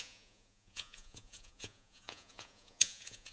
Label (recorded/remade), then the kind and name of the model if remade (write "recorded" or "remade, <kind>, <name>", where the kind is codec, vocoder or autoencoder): remade, vocoder, Vocos